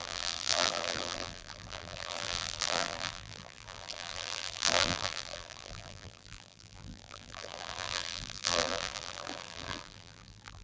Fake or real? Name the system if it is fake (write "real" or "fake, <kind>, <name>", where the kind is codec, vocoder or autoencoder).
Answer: fake, vocoder, BigVGAN v2